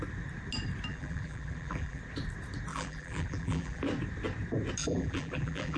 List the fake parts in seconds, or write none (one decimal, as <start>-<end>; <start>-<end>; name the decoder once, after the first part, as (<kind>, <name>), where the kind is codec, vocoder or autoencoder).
0.9-2.0 (vocoder, BigVGAN v2); 2.7-3.8; 4.8-5.8